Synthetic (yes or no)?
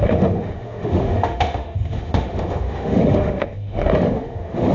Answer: yes